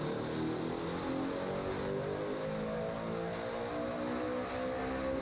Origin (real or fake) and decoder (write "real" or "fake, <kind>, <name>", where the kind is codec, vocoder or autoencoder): real